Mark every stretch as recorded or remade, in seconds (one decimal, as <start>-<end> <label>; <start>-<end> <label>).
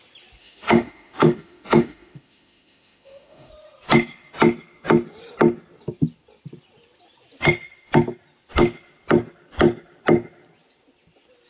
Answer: 0.0-0.4 recorded; 0.4-3.5 remade; 3.5-11.5 recorded